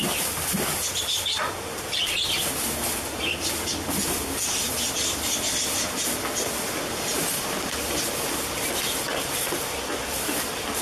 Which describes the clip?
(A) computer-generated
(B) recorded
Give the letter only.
B